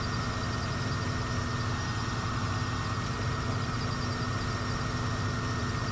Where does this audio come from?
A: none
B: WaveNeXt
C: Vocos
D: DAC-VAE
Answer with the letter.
A